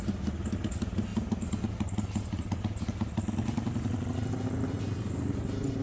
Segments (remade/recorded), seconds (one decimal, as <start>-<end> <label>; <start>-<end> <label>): 0.0-5.8 recorded